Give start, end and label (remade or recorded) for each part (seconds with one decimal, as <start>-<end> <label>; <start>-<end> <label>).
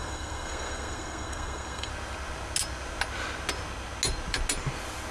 0.0-1.9 remade; 1.9-5.1 recorded